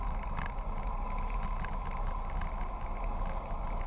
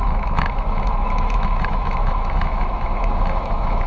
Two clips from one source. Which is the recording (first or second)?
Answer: first